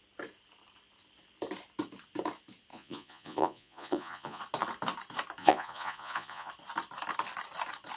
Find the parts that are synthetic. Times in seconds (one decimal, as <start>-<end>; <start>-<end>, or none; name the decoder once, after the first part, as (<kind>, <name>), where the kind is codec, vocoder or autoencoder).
2.7-4.4 (vocoder, Vocos); 5.4-6.5